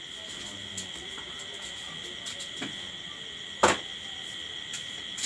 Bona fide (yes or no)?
yes